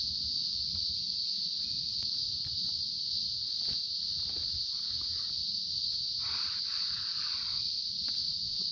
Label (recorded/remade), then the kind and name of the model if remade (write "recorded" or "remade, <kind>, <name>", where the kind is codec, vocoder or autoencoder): recorded